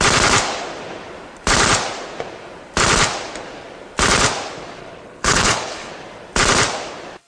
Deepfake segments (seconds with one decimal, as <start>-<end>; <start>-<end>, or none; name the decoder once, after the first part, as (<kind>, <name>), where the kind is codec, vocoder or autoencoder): 4.8-5.9 (codec, HILCodec)